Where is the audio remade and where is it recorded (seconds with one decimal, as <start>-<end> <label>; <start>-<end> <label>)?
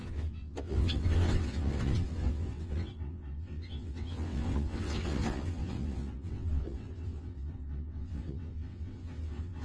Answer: 0.0-9.6 remade